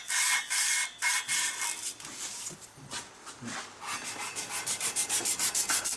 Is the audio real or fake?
real